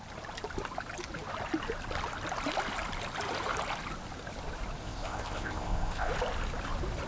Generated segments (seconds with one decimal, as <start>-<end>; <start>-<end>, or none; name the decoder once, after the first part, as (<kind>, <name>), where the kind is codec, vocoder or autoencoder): 4.8-6.1 (codec, ZipCodec)